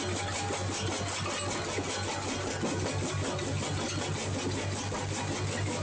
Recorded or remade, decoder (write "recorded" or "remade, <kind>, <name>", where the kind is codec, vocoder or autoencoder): recorded